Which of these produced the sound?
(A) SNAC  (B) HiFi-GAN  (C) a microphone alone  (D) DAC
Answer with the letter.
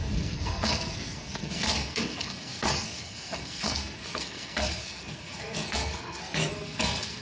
A